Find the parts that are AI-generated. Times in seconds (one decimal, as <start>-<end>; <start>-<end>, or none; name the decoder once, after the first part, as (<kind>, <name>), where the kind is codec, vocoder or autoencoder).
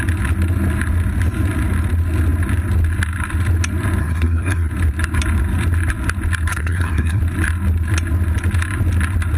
4.0-4.7 (codec, SNAC); 6.5-7.2